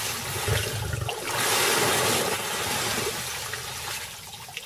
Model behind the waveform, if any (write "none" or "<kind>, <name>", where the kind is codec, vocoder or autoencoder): none